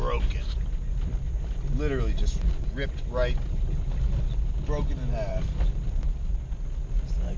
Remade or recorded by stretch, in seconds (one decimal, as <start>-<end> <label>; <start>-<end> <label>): 0.0-7.4 recorded